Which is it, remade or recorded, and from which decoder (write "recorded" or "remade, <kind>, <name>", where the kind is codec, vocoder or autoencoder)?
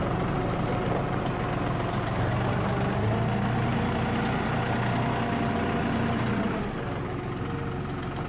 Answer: recorded